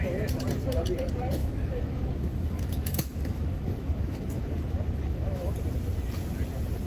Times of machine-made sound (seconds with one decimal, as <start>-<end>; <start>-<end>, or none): 1.4-5.5